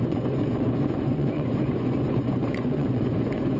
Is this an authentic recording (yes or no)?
no